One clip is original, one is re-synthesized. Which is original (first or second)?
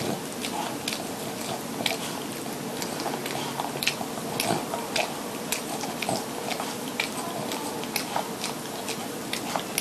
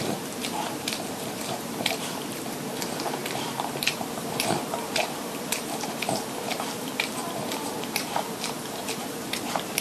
first